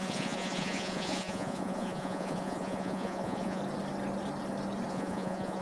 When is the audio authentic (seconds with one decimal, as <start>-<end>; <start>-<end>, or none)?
3.6-4.9

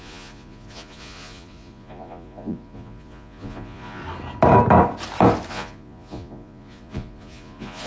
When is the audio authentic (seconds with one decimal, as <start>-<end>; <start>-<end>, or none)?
4.0-5.5

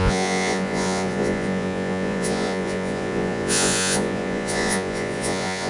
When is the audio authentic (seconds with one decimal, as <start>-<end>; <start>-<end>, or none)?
none

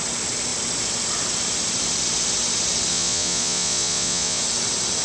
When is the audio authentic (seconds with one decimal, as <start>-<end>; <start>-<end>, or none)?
0.0-2.9; 4.4-5.0

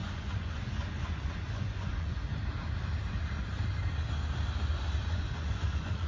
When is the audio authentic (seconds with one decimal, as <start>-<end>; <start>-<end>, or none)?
2.2-5.1

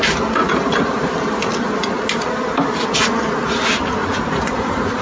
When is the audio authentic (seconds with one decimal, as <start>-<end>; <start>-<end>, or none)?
0.0-4.0

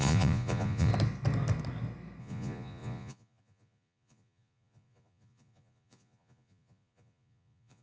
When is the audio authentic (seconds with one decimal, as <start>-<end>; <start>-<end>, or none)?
0.9-2.2

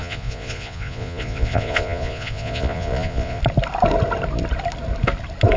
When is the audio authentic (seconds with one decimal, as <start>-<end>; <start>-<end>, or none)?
3.4-5.6